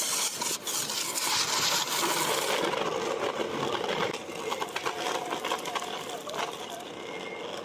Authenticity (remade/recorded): recorded